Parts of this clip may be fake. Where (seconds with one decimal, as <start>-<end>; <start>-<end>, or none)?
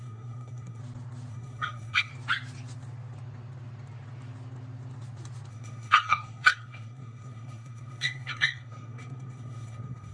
0.0-0.8; 1.3-2.1; 5.5-10.1